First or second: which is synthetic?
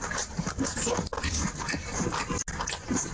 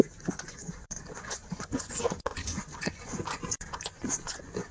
second